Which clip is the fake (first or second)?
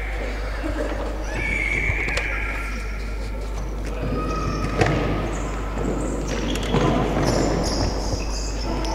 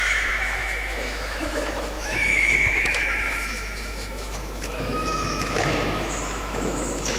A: second